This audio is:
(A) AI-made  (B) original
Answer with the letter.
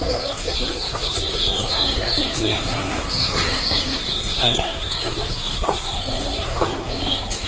A